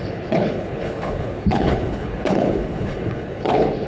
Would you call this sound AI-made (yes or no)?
yes